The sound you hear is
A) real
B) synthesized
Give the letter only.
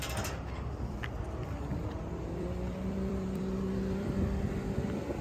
B